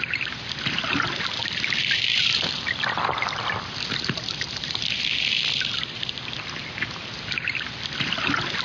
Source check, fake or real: fake